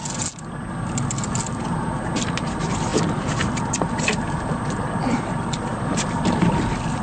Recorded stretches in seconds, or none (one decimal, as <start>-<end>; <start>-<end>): 0.0-2.9; 3.9-7.0